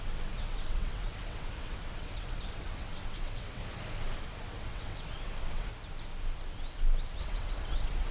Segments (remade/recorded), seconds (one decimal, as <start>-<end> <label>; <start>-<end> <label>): 0.0-3.6 remade; 3.6-4.2 recorded; 4.2-5.7 remade; 5.7-7.2 recorded; 7.2-8.1 remade